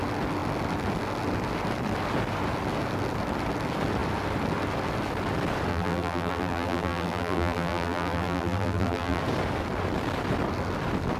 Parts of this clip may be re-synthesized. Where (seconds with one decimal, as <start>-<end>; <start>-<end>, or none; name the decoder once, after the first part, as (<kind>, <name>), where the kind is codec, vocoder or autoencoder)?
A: 5.7-9.2 (vocoder, BigVGAN v2)